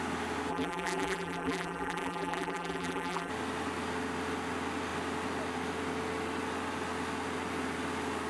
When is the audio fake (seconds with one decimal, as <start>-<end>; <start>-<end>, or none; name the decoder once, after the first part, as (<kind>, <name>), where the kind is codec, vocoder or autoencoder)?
0.5-3.3 (vocoder, BigVGAN v2)